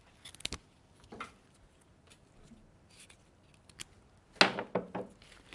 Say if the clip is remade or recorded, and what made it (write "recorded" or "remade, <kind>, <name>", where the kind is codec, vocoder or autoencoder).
recorded